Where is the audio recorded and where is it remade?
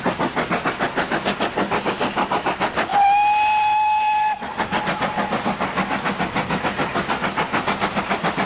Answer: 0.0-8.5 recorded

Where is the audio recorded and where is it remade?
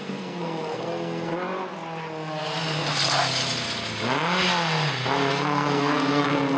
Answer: 0.0-1.3 remade; 1.3-5.3 recorded; 5.3-6.6 remade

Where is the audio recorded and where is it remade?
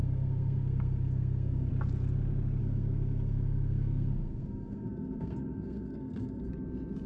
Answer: 0.0-1.7 remade; 1.7-2.6 recorded; 2.6-6.5 remade; 6.5-7.1 recorded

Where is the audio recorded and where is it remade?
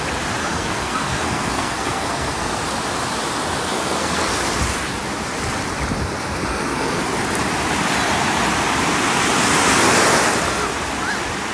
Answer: 0.0-0.4 recorded; 0.4-2.6 remade; 2.6-3.6 recorded; 3.6-4.3 remade; 4.3-6.4 recorded; 6.4-7.0 remade; 7.0-11.5 recorded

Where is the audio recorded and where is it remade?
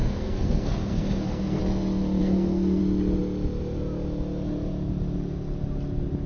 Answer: 0.0-1.6 remade; 1.6-2.2 recorded; 2.2-2.8 remade; 2.8-6.3 recorded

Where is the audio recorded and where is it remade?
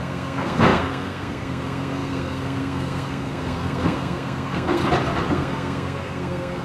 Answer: 0.0-4.8 remade; 4.8-5.3 recorded; 5.3-6.6 remade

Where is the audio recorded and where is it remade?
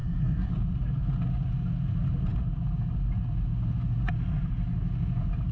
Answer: 0.0-0.5 remade; 0.5-5.5 recorded